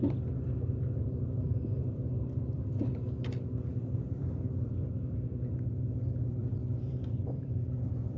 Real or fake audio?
fake